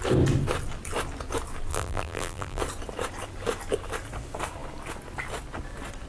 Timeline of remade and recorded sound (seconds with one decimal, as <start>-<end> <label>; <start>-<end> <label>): 0.0-1.7 recorded; 1.7-2.6 remade; 2.6-6.1 recorded